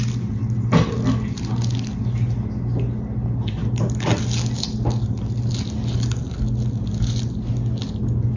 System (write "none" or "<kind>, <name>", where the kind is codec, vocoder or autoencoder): none